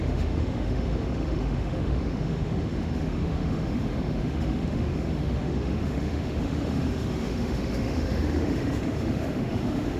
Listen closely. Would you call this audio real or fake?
fake